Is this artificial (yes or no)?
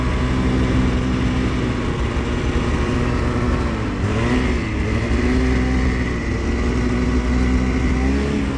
no